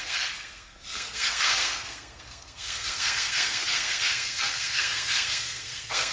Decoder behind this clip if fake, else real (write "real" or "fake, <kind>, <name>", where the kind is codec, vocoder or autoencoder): fake, codec, SNAC